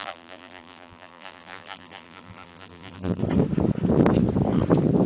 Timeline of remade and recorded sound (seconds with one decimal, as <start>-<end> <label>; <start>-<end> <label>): 0.0-3.2 remade; 3.2-5.1 recorded